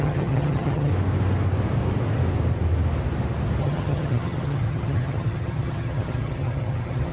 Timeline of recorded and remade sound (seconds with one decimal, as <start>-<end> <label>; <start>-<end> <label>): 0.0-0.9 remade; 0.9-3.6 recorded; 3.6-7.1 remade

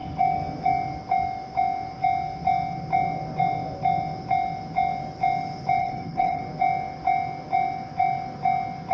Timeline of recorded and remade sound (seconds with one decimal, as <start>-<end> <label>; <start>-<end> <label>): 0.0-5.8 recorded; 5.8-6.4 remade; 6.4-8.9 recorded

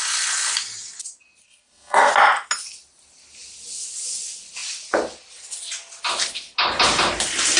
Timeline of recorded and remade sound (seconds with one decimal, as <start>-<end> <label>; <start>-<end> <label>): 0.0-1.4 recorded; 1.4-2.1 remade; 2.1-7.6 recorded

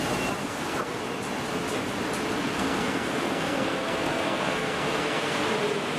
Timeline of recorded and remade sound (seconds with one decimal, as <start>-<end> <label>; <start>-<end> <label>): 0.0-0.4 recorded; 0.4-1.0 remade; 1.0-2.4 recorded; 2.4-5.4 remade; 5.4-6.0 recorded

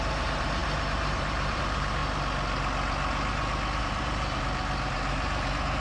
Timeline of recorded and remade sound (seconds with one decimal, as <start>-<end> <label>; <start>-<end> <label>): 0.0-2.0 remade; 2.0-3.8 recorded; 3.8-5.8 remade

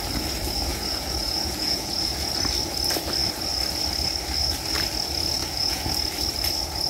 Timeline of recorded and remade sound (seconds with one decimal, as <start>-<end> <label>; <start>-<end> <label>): 0.0-0.7 recorded; 0.7-2.3 remade; 2.3-5.4 recorded; 5.4-5.9 remade; 5.9-6.9 recorded